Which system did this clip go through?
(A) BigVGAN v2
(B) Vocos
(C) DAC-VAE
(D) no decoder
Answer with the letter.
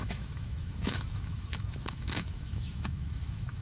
C